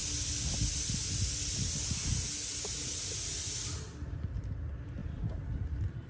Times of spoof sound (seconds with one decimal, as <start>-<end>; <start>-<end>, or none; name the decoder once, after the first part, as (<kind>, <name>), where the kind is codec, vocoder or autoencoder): 5.0-6.1 (vocoder, BigVGAN v2)